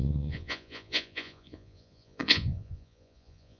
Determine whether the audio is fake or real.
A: fake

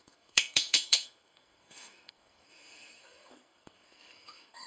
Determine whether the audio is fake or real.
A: fake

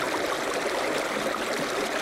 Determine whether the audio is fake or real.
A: real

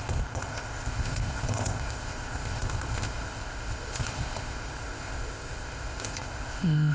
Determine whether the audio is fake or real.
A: fake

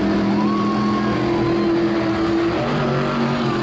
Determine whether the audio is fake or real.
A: real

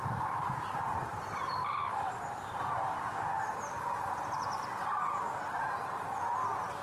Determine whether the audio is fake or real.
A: real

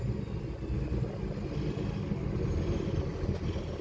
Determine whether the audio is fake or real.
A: real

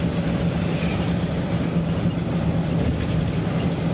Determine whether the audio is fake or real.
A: real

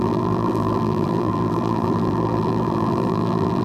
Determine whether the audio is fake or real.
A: fake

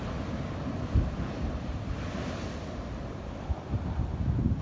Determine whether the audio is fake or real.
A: real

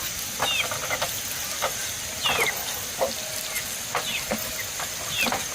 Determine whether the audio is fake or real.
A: real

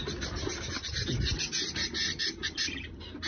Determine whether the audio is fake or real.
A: real